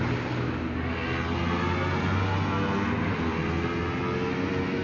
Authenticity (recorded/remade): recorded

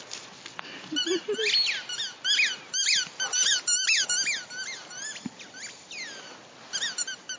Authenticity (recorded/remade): recorded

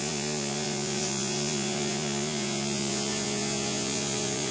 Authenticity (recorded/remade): remade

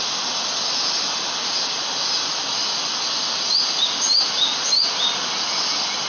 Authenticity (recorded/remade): recorded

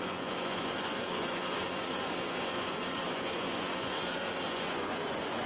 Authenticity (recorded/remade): remade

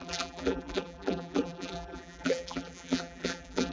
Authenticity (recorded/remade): remade